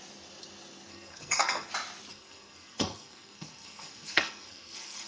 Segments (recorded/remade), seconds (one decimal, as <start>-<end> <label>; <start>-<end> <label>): 0.0-0.9 recorded; 0.9-1.7 remade; 1.7-2.1 recorded; 2.1-5.1 remade